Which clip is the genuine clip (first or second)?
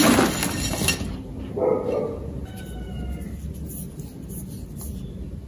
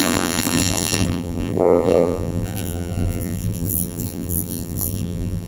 first